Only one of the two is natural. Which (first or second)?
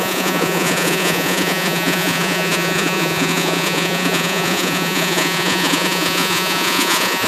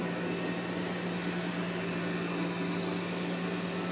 second